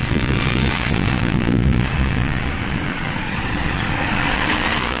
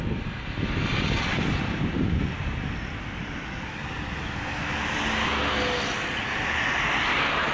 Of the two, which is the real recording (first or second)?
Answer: second